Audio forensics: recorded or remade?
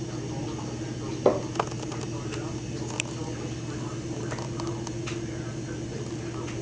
recorded